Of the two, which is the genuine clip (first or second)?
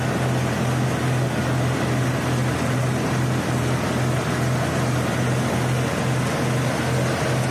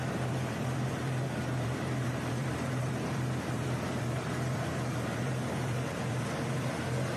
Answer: first